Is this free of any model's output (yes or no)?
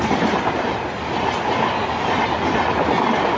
yes